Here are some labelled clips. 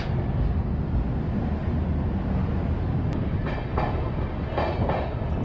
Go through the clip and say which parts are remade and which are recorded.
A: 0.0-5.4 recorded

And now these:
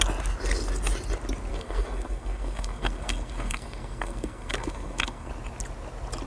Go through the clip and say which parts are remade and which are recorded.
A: 0.0-1.5 recorded; 1.5-5.3 remade; 5.3-6.3 recorded

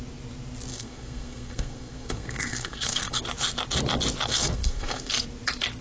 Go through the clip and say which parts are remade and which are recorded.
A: 0.0-0.7 recorded; 0.7-3.2 remade; 3.2-4.3 recorded; 4.3-5.1 remade; 5.1-5.8 recorded

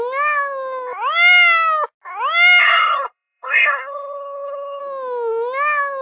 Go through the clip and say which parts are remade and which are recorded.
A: 0.0-2.6 recorded; 2.6-4.8 remade; 4.8-6.0 recorded